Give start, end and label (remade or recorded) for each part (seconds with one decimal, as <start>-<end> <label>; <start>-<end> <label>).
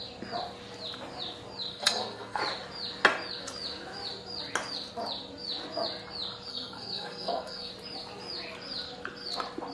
0.0-1.7 recorded; 1.7-2.4 remade; 2.4-6.5 recorded; 6.5-7.7 remade; 7.7-9.7 recorded